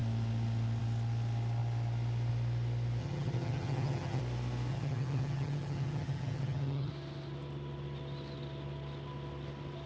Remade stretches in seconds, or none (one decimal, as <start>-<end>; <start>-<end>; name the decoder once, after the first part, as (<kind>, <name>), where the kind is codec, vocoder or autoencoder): 3.0-4.2 (vocoder, HiFi-GAN); 4.7-6.9